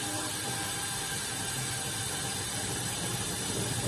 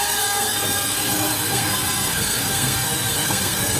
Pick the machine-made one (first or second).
second